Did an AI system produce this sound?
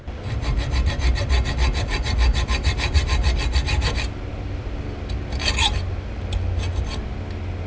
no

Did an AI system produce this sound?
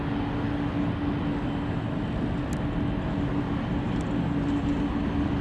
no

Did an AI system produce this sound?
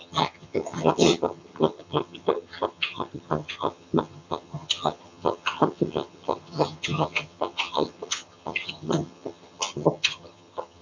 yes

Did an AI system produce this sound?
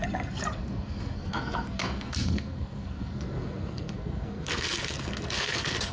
yes